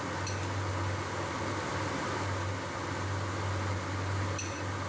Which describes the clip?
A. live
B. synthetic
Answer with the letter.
A